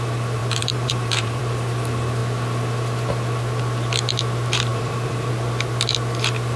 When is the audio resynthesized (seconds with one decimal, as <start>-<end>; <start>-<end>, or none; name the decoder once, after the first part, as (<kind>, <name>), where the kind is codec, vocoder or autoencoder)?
0.4-1.4 (vocoder, BigVGAN v2)